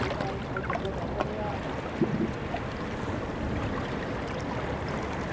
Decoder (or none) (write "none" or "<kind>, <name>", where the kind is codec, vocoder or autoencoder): none